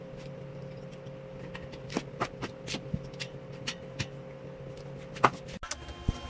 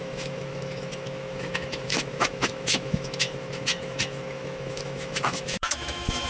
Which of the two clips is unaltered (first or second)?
first